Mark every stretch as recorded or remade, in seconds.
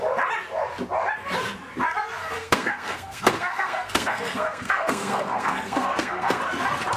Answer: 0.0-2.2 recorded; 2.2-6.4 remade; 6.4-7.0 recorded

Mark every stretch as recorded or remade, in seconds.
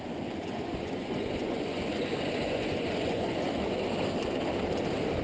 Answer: 0.0-0.4 recorded; 0.4-3.5 remade; 3.5-5.2 recorded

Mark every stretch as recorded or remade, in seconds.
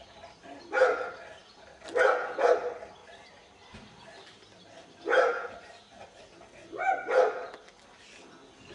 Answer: 0.0-8.7 recorded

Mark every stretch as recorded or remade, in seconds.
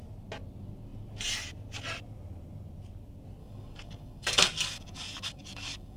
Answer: 0.0-3.4 recorded; 3.4-6.0 remade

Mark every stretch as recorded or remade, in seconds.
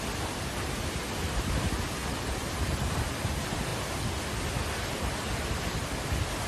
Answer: 0.0-6.5 recorded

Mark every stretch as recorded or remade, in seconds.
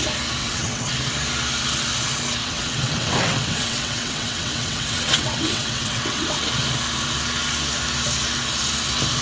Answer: 0.0-0.4 recorded; 0.4-0.9 remade; 0.9-2.4 recorded; 2.4-6.5 remade; 6.5-9.2 recorded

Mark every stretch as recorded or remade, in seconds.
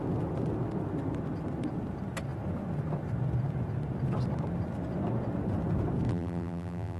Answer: 0.0-6.1 recorded; 6.1-7.0 remade